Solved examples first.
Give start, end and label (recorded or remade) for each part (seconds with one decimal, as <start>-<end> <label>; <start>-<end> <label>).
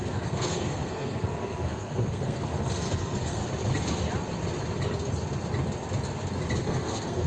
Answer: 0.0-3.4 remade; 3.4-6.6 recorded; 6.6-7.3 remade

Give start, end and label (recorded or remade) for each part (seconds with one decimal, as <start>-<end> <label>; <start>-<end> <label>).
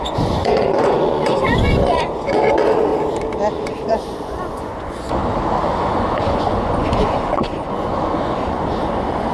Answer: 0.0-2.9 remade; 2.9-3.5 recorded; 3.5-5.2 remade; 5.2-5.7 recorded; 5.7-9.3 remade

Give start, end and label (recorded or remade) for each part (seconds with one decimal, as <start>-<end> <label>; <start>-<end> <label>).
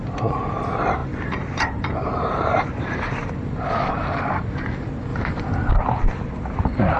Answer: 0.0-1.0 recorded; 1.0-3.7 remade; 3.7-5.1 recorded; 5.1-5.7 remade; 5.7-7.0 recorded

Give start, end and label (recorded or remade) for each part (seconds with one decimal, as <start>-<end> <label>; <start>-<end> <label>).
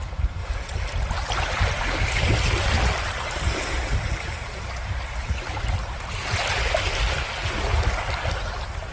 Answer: 0.0-8.9 recorded